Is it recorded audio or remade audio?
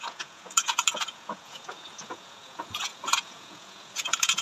remade